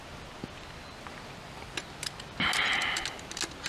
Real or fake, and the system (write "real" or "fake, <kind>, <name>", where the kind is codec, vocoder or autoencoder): real